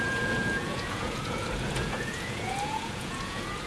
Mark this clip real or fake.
fake